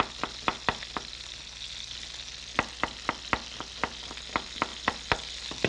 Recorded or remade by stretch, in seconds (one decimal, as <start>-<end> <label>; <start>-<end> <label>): 0.0-5.7 recorded